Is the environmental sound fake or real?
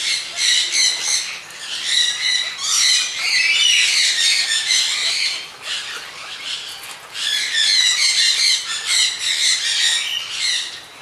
real